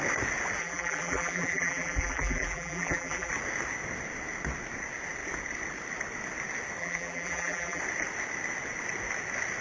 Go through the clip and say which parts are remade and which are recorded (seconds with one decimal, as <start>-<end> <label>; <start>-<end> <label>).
0.0-0.6 recorded; 0.6-3.3 remade; 3.3-6.8 recorded; 6.8-7.8 remade; 7.8-9.6 recorded